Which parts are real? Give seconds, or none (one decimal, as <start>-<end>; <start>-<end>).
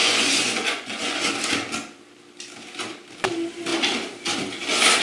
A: 1.2-5.0